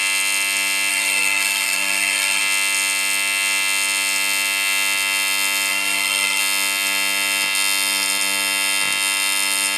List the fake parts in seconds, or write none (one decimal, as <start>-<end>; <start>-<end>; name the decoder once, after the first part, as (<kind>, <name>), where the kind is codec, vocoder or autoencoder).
0.9-2.4 (codec, SNAC); 5.7-6.4